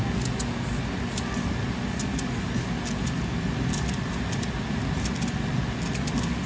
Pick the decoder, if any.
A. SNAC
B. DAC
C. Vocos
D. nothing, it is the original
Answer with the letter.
D